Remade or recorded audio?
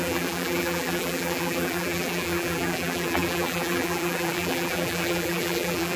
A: remade